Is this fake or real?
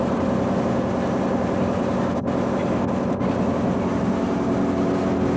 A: real